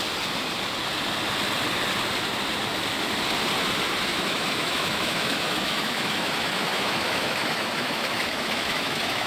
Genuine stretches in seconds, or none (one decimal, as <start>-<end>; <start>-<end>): 0.0-4.1